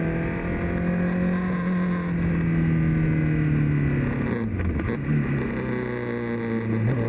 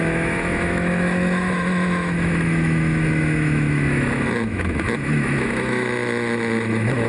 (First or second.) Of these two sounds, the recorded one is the first